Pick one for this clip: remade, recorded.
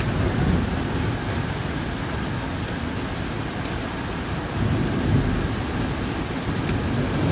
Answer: recorded